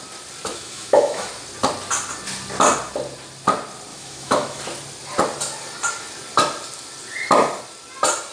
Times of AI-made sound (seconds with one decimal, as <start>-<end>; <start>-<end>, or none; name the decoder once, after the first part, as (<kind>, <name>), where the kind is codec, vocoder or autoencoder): 0.5-1.3 (autoencoder, DAC-VAE); 3.9-4.6